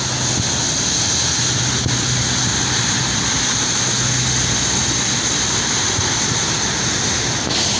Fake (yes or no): no